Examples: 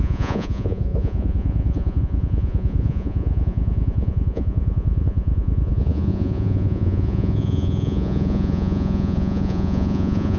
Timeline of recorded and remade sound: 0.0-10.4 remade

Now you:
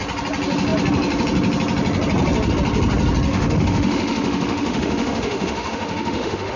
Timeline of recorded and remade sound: 0.0-3.3 recorded; 3.3-6.6 remade

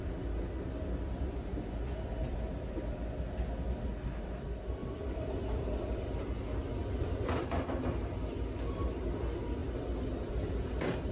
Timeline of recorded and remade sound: 0.0-4.8 recorded; 4.8-6.2 remade; 6.2-6.8 recorded; 6.8-7.8 remade; 7.8-9.6 recorded; 9.6-11.1 remade

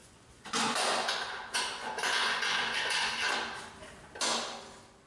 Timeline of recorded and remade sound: 0.0-3.1 remade; 3.1-5.1 recorded

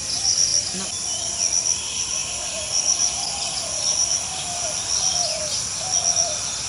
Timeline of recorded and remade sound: 0.0-6.7 recorded

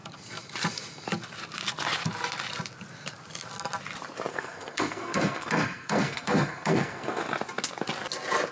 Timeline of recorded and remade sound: 0.0-4.3 recorded; 4.3-7.2 remade; 7.2-8.5 recorded